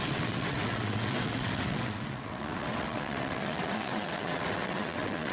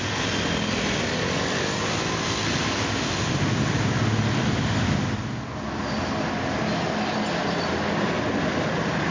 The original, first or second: second